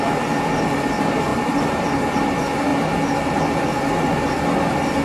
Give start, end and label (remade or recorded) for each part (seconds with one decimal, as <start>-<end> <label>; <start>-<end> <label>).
0.0-1.3 recorded; 1.3-2.0 remade; 2.0-5.0 recorded